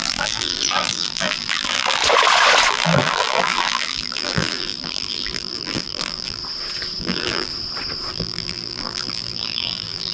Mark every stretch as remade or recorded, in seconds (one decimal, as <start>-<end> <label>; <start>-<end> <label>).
0.0-2.0 remade; 2.0-2.7 recorded; 2.7-6.4 remade; 6.4-7.0 recorded; 7.0-7.5 remade; 7.5-8.1 recorded; 8.1-10.1 remade